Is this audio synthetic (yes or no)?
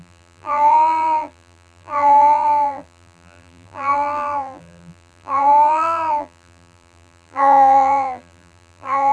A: yes